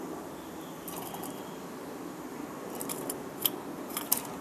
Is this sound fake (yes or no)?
no